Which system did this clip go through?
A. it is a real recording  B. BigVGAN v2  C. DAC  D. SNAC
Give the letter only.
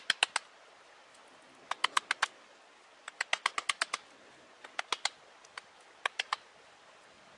A